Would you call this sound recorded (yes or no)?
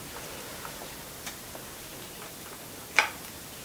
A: yes